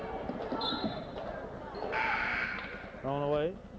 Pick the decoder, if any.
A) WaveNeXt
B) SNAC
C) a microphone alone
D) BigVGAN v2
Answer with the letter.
C